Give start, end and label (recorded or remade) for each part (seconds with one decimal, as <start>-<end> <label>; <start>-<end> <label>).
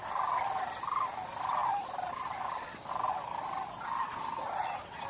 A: 0.0-1.6 recorded; 1.6-2.9 remade; 2.9-5.1 recorded